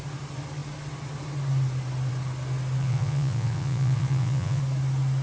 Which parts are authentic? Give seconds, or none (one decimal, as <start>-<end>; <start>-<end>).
0.0-2.8; 4.6-5.2